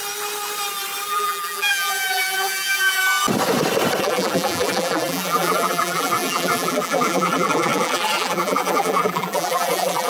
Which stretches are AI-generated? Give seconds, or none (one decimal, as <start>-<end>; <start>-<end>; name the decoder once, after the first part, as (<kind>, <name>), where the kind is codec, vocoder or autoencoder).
1.1-3.0 (vocoder, BigVGAN v2); 4.0-10.1